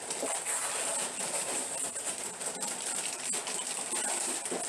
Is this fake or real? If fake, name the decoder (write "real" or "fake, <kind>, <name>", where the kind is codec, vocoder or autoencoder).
real